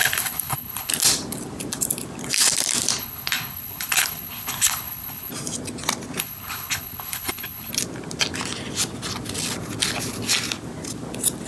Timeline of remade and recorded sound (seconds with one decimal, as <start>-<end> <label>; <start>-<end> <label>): 0.0-0.9 remade; 0.9-3.0 recorded; 3.0-5.3 remade; 5.3-6.2 recorded; 6.2-7.7 remade; 7.7-11.5 recorded